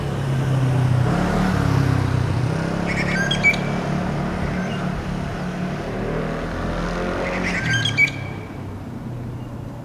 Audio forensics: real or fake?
real